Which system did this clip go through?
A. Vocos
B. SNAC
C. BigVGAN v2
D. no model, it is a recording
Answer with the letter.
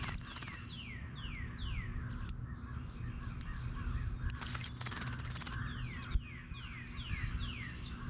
D